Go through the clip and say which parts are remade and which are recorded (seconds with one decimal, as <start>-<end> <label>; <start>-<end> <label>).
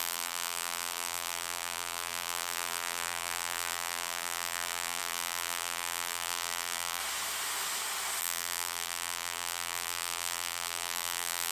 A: 0.0-7.0 remade; 7.0-8.2 recorded; 8.2-11.5 remade